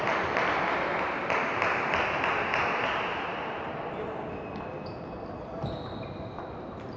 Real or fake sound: real